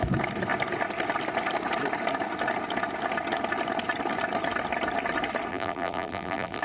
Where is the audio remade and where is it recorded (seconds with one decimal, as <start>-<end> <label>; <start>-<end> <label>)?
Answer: 0.0-5.5 recorded; 5.5-6.6 remade